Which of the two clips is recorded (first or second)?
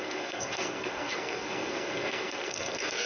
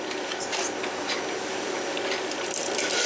second